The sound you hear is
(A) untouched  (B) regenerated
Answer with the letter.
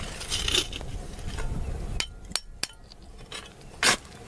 A